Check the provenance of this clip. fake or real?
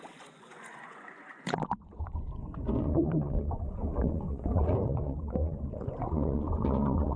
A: fake